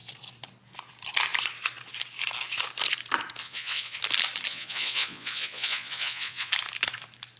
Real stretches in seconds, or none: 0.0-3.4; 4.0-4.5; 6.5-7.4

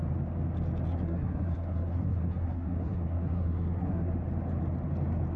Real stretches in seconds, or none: 0.0-0.9; 4.1-5.4

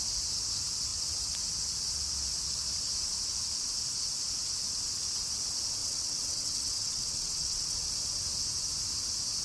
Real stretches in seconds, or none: 0.0-5.8; 7.9-9.4

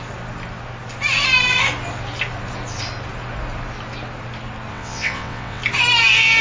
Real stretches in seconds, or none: 0.0-4.7; 5.6-6.4

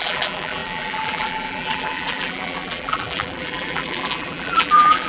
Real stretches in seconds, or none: none